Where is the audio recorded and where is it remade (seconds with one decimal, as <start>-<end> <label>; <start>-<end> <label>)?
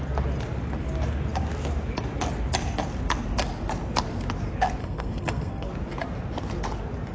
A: 0.0-4.8 recorded; 4.8-5.7 remade; 5.7-7.1 recorded